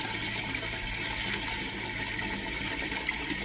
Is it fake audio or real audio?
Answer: real